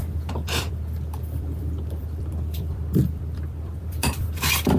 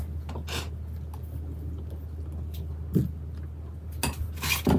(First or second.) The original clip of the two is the second